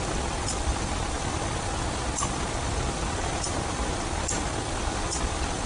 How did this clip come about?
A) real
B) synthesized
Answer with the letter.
A